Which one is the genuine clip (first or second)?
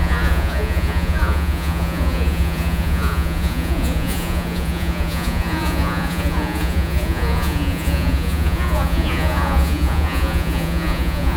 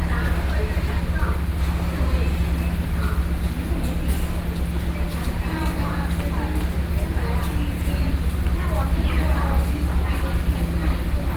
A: second